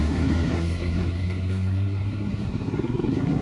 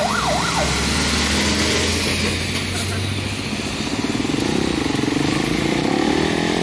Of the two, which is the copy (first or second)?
first